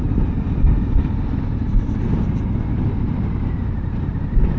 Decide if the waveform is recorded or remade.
recorded